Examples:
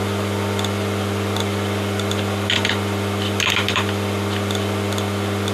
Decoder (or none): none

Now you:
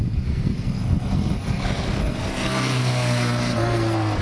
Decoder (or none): codec, SNAC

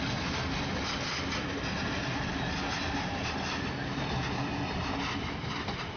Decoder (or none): none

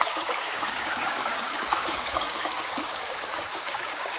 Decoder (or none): codec, DAC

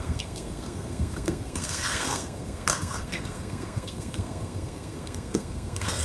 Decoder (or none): codec, SNAC